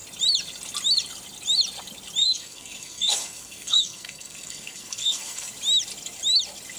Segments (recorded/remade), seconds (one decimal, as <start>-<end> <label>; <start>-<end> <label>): 0.0-2.2 recorded; 2.2-5.5 remade; 5.5-6.8 recorded